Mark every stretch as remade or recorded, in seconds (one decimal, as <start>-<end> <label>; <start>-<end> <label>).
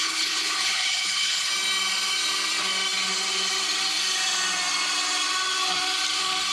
0.0-1.5 remade; 1.5-6.5 recorded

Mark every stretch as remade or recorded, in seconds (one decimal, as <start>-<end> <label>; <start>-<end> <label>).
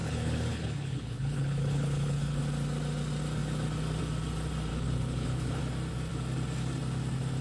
0.0-2.4 remade; 2.4-4.7 recorded; 4.7-5.6 remade; 5.6-7.4 recorded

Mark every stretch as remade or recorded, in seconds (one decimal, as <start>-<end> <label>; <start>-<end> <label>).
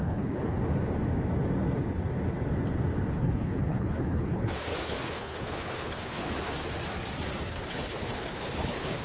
0.0-0.6 remade; 0.6-3.1 recorded; 3.1-6.2 remade; 6.2-7.5 recorded; 7.5-9.0 remade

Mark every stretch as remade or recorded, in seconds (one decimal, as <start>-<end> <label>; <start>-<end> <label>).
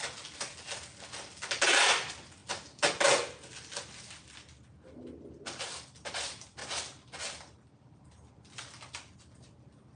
0.0-10.0 recorded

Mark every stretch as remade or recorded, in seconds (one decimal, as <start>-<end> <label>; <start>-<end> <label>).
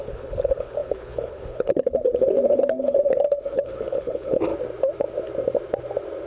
0.0-4.5 remade; 4.5-6.3 recorded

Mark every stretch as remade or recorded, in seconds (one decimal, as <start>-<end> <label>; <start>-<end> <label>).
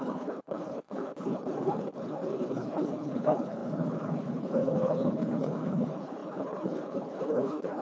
0.0-7.8 remade